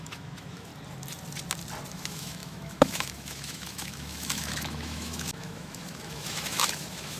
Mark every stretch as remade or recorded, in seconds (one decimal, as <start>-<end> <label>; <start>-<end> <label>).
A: 0.0-0.7 remade; 0.7-1.9 recorded; 1.9-7.2 remade